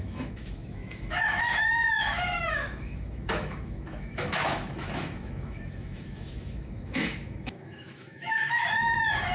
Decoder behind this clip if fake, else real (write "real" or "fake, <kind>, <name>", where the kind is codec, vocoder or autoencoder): fake, autoencoder, DAC-VAE